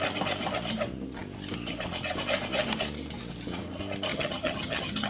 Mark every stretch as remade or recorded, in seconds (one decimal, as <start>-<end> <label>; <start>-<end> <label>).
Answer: 0.0-4.1 recorded; 4.1-5.1 remade